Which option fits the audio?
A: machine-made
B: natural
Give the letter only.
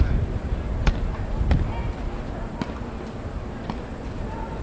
B